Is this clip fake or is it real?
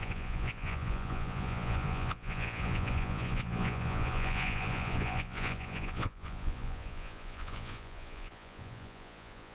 fake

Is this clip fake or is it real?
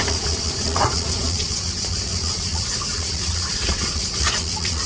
fake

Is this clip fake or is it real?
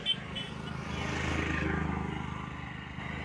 real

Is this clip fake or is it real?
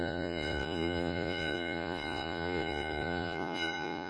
fake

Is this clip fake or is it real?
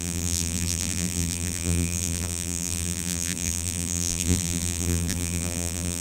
fake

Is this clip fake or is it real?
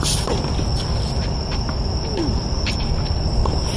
real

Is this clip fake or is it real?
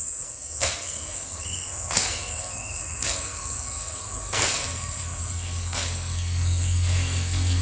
fake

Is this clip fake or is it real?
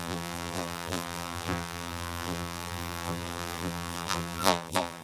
fake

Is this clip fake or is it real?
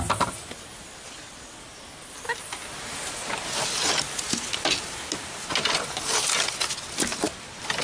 real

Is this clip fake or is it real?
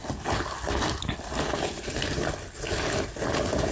real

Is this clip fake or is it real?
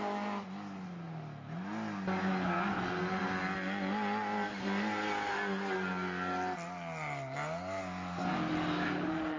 real